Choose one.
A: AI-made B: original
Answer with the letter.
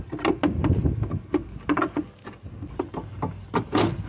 B